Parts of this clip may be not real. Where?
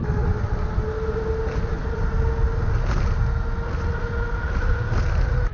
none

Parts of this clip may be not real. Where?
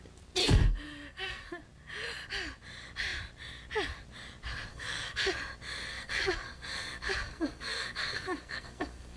0.4-1.6 (codec, SNAC); 4.7-5.3; 5.9-9.2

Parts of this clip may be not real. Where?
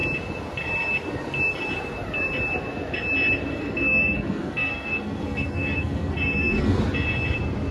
3.5-6.8 (codec, SNAC)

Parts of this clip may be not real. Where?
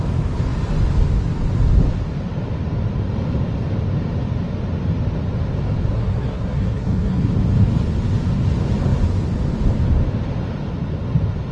5.9-7.3 (codec, SNAC)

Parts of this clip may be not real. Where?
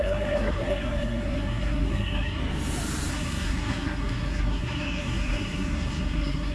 0.0-2.4 (codec, SNAC); 3.1-6.5